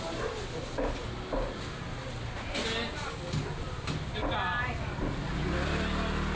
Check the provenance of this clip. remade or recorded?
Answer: recorded